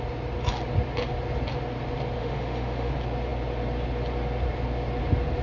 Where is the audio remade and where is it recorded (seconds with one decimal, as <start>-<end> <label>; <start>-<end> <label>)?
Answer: 0.0-2.2 recorded; 2.2-2.9 remade; 2.9-5.4 recorded

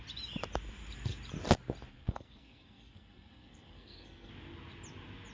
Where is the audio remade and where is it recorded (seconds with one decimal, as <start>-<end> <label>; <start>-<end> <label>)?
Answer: 0.0-1.9 recorded; 1.9-4.3 remade; 4.3-5.3 recorded

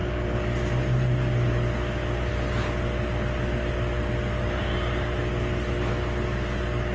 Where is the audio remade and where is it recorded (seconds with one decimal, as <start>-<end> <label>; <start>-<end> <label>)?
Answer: 0.0-6.9 recorded

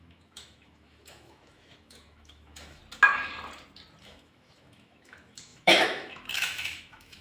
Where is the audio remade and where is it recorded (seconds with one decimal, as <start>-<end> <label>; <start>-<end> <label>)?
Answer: 0.0-2.8 remade; 2.8-4.0 recorded; 4.0-7.2 remade